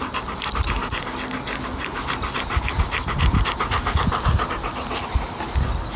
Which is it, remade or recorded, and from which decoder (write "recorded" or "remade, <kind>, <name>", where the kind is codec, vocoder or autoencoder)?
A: recorded